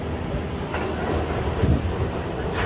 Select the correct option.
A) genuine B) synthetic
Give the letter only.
A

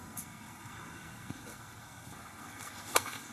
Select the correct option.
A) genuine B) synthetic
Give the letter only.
B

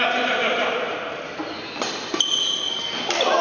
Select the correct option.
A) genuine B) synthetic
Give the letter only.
A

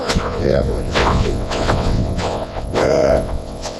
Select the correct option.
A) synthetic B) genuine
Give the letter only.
A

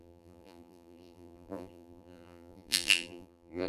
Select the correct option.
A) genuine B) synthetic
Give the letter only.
B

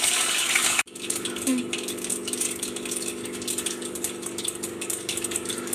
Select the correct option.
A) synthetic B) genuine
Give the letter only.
A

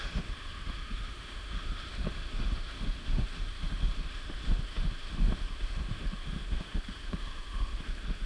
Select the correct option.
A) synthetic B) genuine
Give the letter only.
A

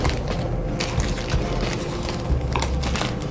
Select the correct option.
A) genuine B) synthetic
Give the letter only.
A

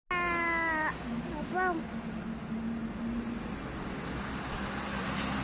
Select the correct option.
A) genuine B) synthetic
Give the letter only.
A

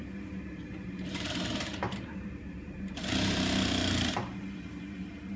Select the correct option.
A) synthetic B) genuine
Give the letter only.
A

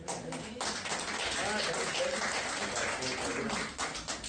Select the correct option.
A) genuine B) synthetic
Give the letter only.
A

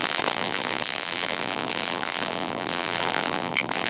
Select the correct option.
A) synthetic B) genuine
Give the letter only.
A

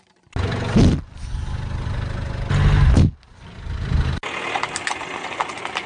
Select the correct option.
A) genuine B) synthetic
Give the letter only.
A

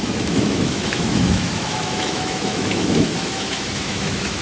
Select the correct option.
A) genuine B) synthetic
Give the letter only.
B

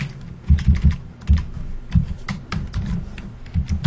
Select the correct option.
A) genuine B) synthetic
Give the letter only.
A